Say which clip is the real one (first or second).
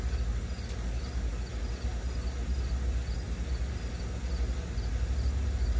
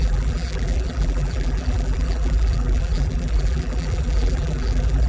first